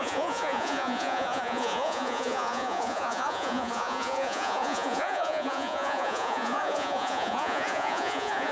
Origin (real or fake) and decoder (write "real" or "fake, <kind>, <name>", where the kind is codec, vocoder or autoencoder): fake, vocoder, Vocos